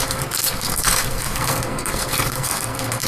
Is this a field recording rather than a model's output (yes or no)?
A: no